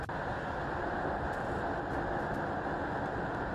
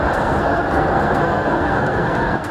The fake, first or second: second